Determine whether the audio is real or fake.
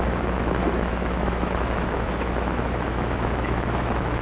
fake